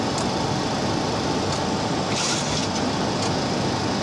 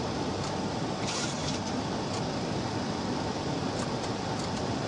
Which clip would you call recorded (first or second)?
first